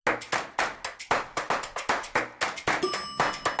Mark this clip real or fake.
real